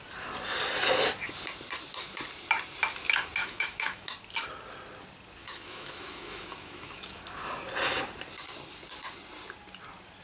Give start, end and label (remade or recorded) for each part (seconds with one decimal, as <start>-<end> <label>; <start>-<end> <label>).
0.0-3.4 recorded; 3.4-4.1 remade; 4.1-5.4 recorded; 5.4-7.2 remade; 7.2-10.2 recorded